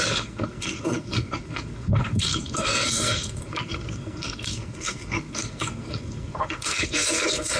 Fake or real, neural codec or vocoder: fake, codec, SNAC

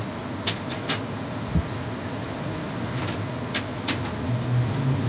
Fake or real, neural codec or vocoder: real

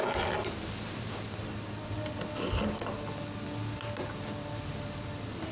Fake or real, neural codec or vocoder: real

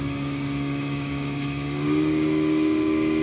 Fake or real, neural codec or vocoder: fake, codec, DAC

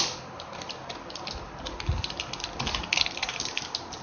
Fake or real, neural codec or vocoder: real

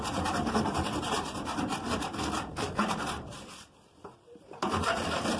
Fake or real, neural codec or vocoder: fake, vocoder, BigVGAN v2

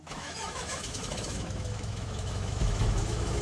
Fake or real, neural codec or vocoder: fake, autoencoder, DAC-VAE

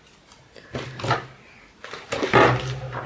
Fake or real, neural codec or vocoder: real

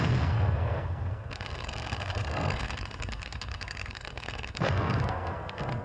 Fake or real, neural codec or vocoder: fake, codec, SNAC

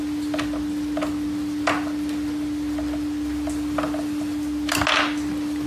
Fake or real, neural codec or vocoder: real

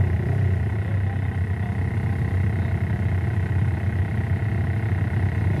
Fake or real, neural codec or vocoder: real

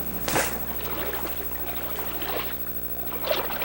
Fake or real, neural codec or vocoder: real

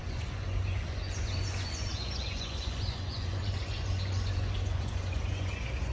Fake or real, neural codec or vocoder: fake, vocoder, Vocos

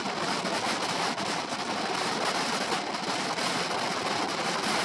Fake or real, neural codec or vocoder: real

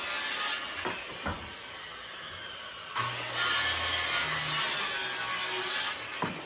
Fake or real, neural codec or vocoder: real